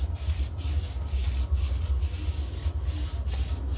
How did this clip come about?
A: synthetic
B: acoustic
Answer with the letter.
B